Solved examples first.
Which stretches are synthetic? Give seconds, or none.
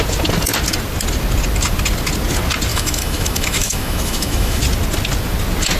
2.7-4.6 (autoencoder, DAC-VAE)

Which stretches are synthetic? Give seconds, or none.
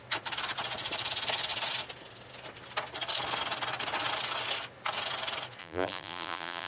5.6-6.7 (vocoder, BigVGAN v2)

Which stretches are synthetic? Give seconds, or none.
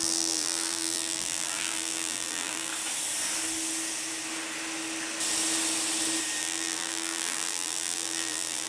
0.0-2.7 (vocoder, BigVGAN v2); 6.4-8.7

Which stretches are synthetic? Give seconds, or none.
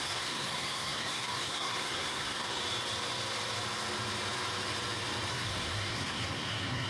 0.0-2.6 (codec, SNAC); 5.3-6.9